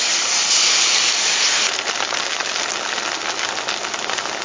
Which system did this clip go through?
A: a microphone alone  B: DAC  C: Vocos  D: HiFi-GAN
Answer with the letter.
A